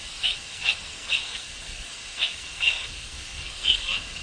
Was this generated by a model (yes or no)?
yes